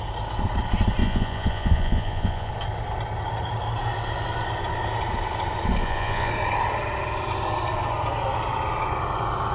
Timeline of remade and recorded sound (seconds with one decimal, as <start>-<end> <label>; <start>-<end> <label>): 0.0-1.0 recorded; 1.0-2.5 remade; 2.5-5.8 recorded; 5.8-6.3 remade; 6.3-9.5 recorded